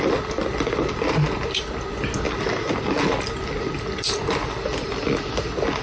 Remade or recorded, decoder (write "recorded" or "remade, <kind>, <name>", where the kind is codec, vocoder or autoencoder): recorded